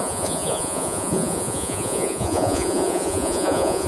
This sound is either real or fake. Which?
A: fake